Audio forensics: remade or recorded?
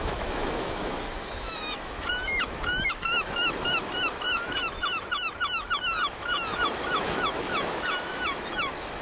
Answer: remade